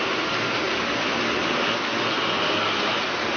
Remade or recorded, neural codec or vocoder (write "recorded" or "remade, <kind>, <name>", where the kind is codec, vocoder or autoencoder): recorded